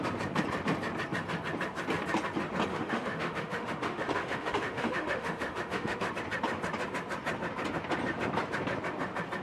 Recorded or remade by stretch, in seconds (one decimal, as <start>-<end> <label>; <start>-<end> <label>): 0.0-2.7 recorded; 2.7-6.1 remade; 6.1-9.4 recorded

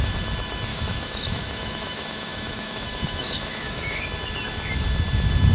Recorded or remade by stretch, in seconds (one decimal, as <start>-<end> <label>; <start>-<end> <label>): 0.0-0.7 recorded; 0.7-4.0 remade; 4.0-5.5 recorded

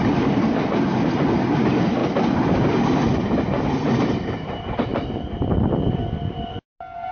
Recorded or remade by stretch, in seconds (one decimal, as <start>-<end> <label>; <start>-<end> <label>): 0.0-7.1 recorded

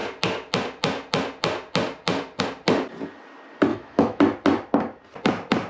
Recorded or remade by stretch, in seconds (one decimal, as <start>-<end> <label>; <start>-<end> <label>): 0.0-3.7 recorded; 3.7-4.2 remade; 4.2-5.7 recorded

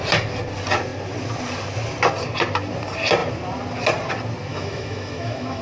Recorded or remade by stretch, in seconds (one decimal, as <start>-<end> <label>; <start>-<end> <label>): 0.0-4.5 recorded; 4.5-5.6 remade